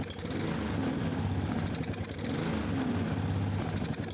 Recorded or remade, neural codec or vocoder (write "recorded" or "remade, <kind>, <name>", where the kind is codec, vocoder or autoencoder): recorded